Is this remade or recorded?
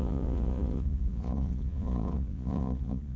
remade